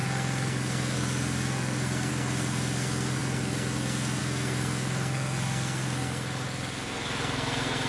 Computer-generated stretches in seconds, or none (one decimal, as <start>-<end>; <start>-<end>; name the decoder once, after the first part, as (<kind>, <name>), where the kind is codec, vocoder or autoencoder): 0.0-7.9 (codec, SNAC)